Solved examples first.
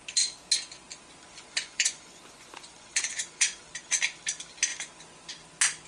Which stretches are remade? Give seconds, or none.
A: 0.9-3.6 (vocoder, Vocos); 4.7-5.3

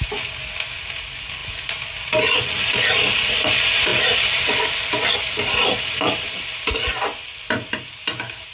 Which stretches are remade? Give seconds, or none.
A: none

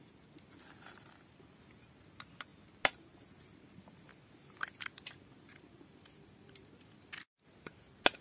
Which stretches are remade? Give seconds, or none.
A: none